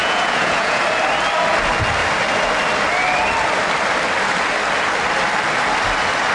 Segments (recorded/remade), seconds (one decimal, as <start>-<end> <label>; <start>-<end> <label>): 0.0-0.8 remade; 0.8-6.3 recorded